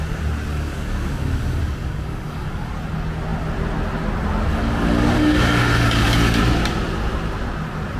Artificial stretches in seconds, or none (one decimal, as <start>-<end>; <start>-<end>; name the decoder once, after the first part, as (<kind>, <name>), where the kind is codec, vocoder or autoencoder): 0.5-2.7 (codec, DAC); 4.5-6.4